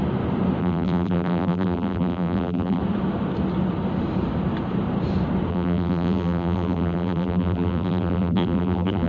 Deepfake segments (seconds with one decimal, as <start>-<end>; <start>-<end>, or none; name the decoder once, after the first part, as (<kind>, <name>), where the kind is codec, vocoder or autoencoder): 0.6-2.8 (vocoder, BigVGAN v2); 5.5-9.1